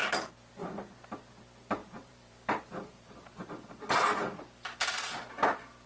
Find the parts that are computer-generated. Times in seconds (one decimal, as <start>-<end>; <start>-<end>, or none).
0.0-0.5; 1.8-3.3